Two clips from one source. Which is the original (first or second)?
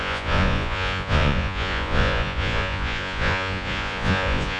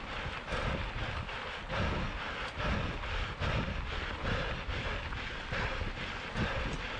second